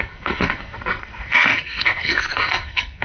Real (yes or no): no